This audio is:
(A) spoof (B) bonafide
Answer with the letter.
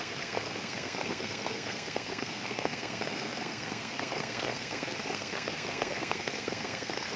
A